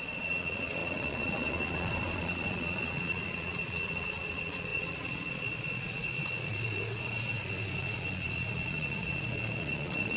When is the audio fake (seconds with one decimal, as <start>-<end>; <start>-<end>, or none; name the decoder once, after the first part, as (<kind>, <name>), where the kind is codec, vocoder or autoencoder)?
0.0-10.2 (vocoder, Vocos)

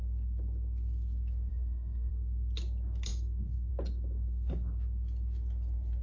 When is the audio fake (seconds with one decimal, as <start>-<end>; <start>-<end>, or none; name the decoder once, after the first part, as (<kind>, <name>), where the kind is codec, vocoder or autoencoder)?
1.5-2.1 (codec, DAC)

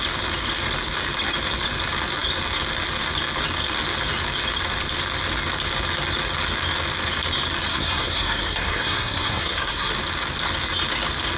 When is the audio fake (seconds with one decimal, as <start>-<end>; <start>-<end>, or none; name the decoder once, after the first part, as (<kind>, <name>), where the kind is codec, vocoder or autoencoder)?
7.7-9.9 (codec, SNAC)

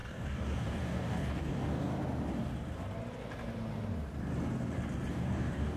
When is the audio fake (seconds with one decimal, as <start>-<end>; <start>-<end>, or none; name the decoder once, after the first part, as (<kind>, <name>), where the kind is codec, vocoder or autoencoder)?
0.0-1.9 (codec, DAC); 5.1-5.8

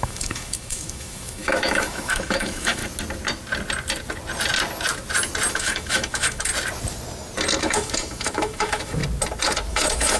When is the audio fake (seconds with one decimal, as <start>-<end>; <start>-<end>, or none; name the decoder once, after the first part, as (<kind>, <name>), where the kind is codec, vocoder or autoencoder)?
0.0-2.8 (autoencoder, DAC-VAE); 5.5-6.5; 7.6-9.0; 9.7-10.2

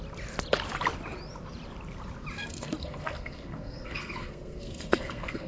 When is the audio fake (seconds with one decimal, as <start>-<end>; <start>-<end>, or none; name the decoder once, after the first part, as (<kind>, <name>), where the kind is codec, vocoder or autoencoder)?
2.4-5.5 (codec, SNAC)

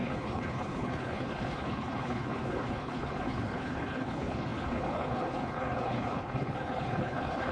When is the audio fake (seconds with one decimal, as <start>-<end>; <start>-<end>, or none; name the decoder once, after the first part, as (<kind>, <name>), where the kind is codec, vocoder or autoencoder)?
0.0-7.5 (codec, HILCodec)

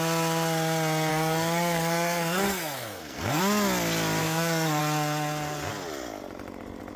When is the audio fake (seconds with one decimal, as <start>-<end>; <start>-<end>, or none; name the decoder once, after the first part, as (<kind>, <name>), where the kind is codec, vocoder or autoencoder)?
1.1-3.4 (codec, SNAC); 4.2-4.8